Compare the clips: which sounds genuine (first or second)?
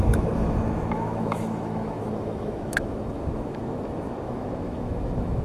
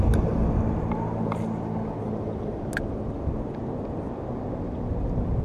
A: second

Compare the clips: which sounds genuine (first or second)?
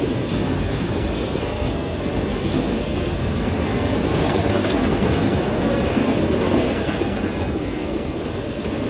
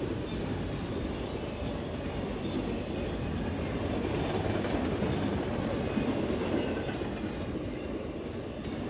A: second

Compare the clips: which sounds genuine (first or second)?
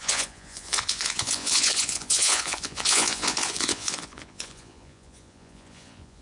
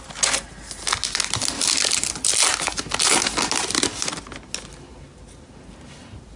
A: second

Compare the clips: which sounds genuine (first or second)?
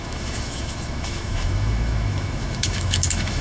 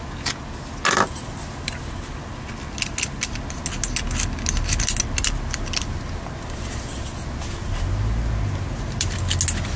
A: second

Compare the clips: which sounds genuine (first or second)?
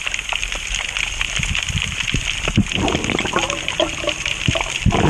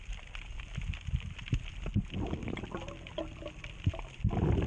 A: second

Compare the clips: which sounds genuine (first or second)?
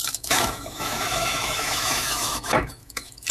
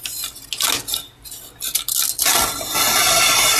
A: second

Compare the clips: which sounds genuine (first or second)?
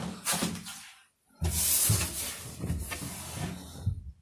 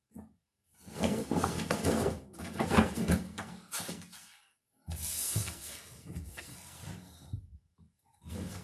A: first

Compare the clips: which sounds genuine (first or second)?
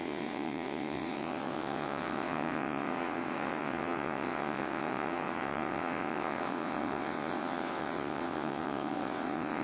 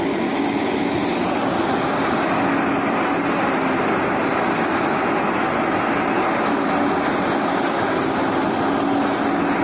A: second